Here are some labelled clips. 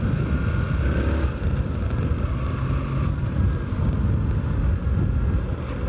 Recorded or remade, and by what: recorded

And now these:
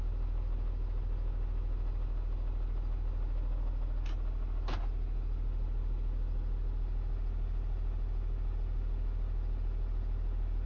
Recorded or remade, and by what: recorded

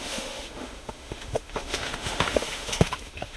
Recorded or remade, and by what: remade, autoencoder, DAC-VAE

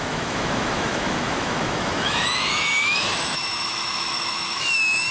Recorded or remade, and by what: remade, autoencoder, DAC-VAE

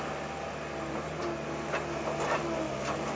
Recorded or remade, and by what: recorded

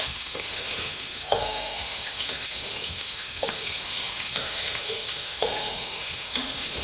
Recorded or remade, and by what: remade, autoencoder, DAC-VAE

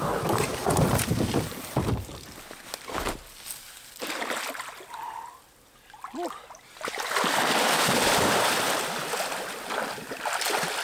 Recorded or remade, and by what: recorded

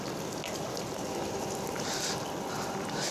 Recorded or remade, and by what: recorded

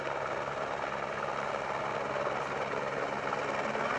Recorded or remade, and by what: recorded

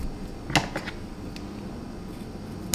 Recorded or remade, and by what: recorded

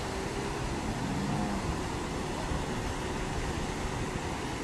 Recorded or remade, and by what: recorded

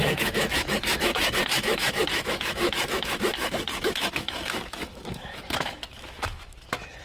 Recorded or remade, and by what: remade, autoencoder, DAC-VAE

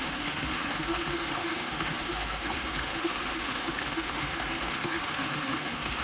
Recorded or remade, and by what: remade, autoencoder, DAC-VAE